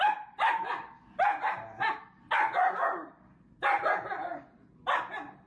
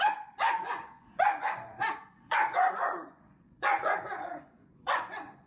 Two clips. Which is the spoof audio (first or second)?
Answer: second